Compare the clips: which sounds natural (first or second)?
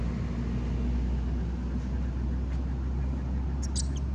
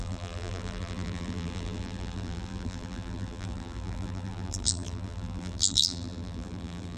first